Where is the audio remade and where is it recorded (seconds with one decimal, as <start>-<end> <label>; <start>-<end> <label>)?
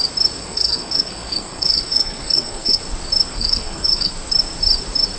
0.0-0.4 recorded; 0.4-2.8 remade; 2.8-3.3 recorded; 3.3-4.1 remade; 4.1-5.2 recorded